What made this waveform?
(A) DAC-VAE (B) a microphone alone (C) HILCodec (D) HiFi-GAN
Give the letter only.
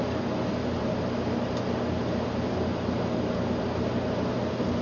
B